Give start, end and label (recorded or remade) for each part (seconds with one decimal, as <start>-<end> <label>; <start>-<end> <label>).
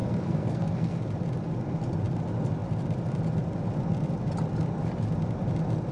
0.0-1.0 remade; 1.0-5.9 recorded